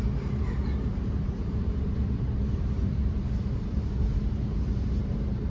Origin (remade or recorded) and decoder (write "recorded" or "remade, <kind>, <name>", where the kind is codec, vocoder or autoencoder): remade, vocoder, BigVGAN v2